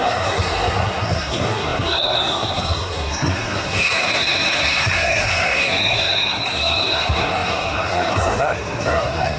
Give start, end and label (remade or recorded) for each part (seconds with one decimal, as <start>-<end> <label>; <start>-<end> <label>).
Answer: 0.0-9.4 remade